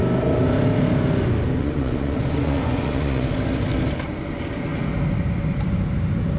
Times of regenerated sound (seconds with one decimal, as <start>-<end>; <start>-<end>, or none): 1.6-3.3